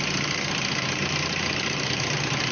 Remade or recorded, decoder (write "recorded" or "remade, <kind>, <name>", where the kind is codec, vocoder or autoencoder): recorded